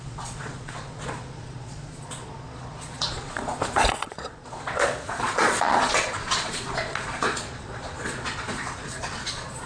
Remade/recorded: remade